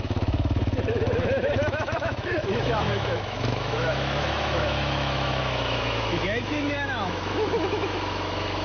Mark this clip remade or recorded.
remade